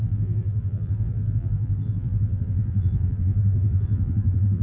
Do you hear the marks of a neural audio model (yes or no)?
yes